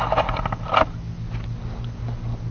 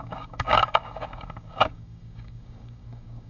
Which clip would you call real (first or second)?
first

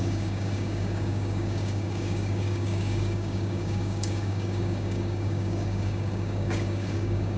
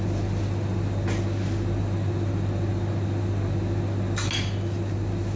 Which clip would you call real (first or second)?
second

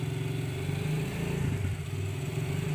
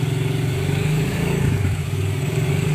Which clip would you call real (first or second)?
first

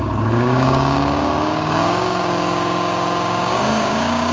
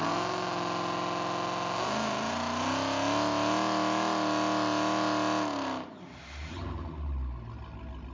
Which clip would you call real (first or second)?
second